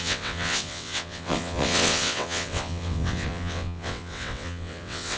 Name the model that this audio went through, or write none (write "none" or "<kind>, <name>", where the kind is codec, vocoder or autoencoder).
vocoder, WaveNeXt